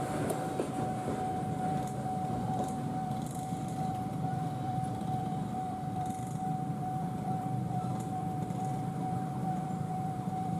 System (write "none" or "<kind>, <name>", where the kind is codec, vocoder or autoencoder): vocoder, BigVGAN v2